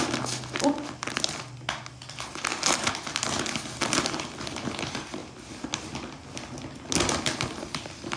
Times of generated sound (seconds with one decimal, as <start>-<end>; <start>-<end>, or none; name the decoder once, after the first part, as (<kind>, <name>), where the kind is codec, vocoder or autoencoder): none

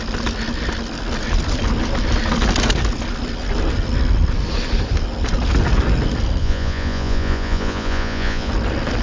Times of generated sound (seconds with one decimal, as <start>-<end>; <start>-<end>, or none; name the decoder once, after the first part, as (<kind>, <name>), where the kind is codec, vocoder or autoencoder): 6.4-8.5 (vocoder, Vocos)

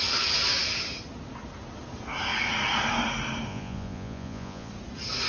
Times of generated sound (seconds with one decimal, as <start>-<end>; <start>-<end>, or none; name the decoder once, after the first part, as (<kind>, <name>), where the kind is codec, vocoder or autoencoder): 3.5-4.7 (vocoder, Vocos)

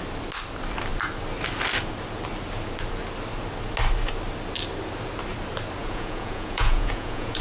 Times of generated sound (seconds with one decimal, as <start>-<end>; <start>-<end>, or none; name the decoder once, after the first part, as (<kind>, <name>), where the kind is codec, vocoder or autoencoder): 5.8-7.4 (vocoder, Vocos)

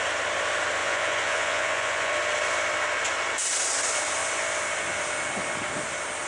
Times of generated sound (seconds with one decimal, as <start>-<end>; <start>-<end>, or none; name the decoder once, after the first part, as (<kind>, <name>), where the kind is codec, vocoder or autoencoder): 0.8-2.1 (vocoder, Vocos)